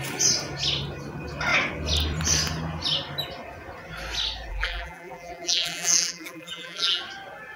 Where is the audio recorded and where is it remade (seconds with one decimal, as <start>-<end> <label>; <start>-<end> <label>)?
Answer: 0.0-4.5 recorded; 4.5-7.0 remade; 7.0-7.6 recorded